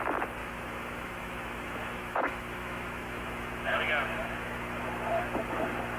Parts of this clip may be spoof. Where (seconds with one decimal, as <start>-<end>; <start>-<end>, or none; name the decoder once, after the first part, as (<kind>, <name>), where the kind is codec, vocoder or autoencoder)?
0.4-3.8 (autoencoder, DAC-VAE); 4.2-4.8